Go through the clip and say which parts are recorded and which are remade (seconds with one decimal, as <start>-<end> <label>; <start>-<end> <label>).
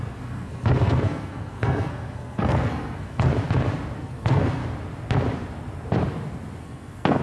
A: 0.0-3.3 remade; 3.3-4.0 recorded; 4.0-4.6 remade; 4.6-6.6 recorded; 6.6-7.2 remade